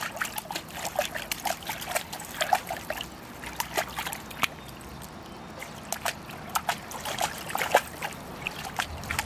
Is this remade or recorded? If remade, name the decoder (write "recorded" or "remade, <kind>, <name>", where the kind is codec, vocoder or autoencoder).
recorded